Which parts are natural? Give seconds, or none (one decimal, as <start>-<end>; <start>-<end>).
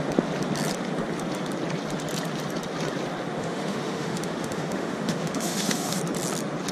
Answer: 0.0-3.4; 6.0-6.7